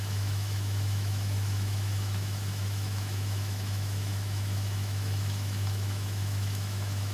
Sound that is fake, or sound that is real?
fake